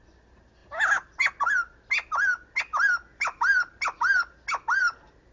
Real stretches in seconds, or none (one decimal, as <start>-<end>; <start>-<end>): 0.0-3.1; 3.8-5.3